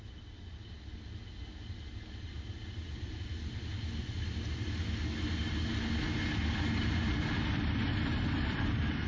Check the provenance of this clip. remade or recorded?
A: recorded